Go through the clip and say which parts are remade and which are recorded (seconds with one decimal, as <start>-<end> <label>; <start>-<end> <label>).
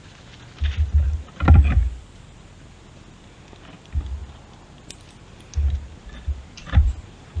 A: 0.0-7.4 recorded